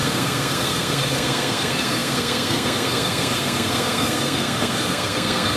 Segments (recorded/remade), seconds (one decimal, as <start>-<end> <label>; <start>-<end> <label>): 0.0-5.6 remade